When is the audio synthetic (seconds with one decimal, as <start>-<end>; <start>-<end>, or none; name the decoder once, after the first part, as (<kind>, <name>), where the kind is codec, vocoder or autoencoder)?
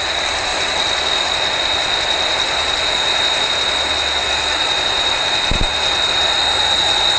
none